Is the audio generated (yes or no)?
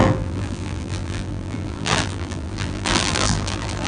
yes